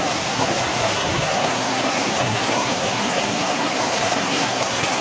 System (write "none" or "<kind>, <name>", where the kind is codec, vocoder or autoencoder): codec, SNAC